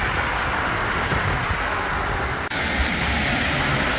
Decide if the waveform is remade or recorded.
recorded